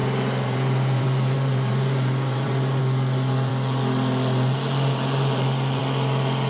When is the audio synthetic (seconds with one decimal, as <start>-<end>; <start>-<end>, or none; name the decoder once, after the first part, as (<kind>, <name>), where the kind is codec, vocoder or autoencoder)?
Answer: 0.0-2.8 (vocoder, BigVGAN v2)